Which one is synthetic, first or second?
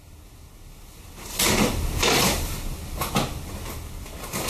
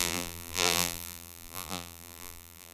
second